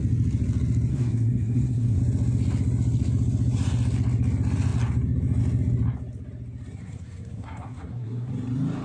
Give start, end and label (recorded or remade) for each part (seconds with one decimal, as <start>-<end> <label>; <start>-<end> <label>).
0.0-0.9 recorded; 0.9-2.0 remade; 2.0-6.8 recorded; 6.8-8.3 remade; 8.3-8.8 recorded